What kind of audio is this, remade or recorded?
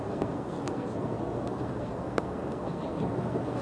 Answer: remade